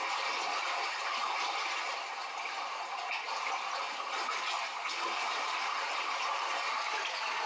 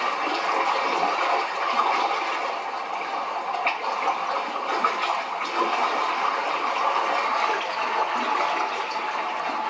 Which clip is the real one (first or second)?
second